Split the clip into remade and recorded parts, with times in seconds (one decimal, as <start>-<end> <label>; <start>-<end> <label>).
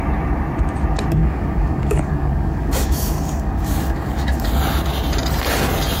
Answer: 0.0-1.2 recorded; 1.2-4.5 remade; 4.5-6.0 recorded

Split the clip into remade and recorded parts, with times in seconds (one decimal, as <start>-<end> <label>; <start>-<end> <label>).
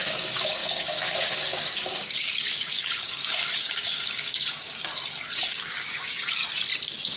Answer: 0.0-4.9 remade; 4.9-5.4 recorded; 5.4-6.4 remade; 6.4-7.2 recorded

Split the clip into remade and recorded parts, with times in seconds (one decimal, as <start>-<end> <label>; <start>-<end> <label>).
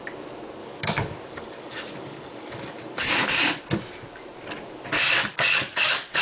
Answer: 0.0-0.6 recorded; 0.6-3.1 remade; 3.1-5.2 recorded; 5.2-6.2 remade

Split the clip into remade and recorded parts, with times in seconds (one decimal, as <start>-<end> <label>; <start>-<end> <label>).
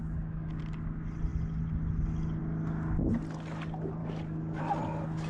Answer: 0.0-0.6 remade; 0.6-4.0 recorded; 4.0-4.6 remade; 4.6-5.3 recorded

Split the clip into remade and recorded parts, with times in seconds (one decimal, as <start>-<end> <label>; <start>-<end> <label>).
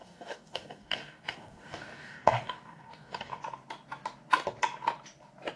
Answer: 0.0-3.4 remade; 3.4-5.6 recorded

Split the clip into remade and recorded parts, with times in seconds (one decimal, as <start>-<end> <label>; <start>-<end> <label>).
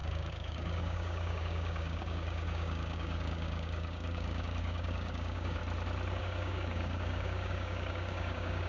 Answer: 0.0-5.6 remade; 5.6-6.2 recorded; 6.2-8.7 remade